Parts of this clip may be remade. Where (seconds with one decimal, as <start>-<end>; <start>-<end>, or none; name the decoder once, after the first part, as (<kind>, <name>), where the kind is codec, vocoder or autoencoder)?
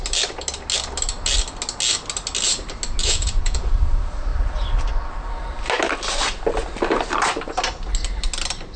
3.0-3.7 (vocoder, Vocos)